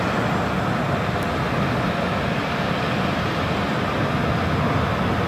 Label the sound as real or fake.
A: real